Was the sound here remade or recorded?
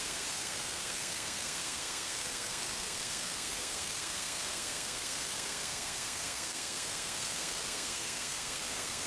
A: remade